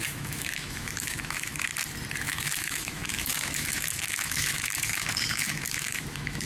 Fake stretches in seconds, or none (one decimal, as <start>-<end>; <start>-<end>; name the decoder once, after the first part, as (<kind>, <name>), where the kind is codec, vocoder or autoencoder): 0.0-1.7 (autoencoder, DAC-VAE); 2.2-6.5